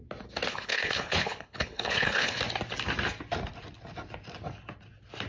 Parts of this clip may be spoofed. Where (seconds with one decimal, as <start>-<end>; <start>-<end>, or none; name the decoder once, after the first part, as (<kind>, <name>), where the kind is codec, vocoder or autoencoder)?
0.5-2.4 (codec, HILCodec)